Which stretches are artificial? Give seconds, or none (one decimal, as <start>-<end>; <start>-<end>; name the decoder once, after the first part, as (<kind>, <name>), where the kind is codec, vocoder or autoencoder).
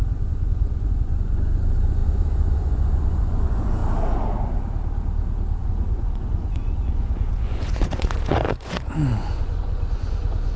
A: 0.0-3.8 (vocoder, Vocos); 5.6-10.6